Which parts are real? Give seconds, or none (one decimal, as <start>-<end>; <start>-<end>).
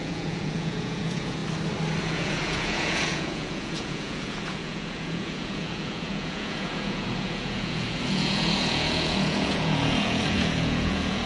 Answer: 1.4-2.0